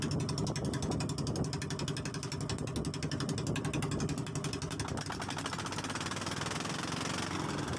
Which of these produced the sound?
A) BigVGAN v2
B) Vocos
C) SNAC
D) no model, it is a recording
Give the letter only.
D